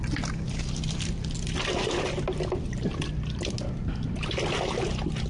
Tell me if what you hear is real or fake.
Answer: real